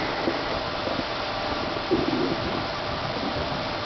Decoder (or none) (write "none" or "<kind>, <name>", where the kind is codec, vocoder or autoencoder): none